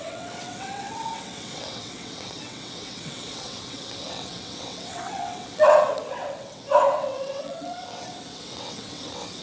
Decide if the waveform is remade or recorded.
remade